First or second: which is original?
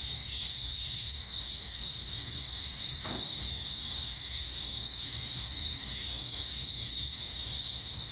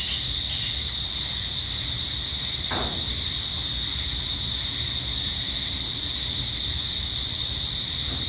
second